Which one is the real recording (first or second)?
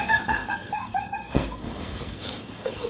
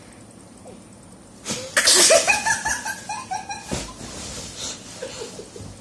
second